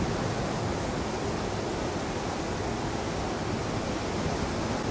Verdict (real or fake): real